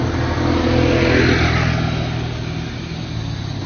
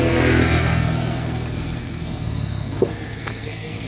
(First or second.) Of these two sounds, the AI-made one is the second